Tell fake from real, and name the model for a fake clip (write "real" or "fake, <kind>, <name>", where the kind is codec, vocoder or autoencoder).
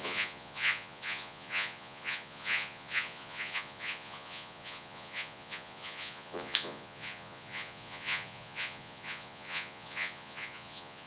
fake, vocoder, Vocos